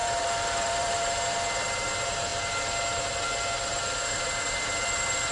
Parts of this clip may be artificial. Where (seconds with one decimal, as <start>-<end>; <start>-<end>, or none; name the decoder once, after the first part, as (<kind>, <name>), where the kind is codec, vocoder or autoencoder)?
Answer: 0.0-1.0 (vocoder, BigVGAN v2); 3.7-5.3